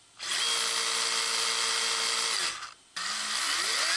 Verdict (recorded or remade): recorded